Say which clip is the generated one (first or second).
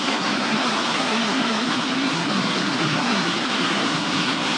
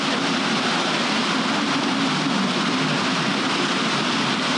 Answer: first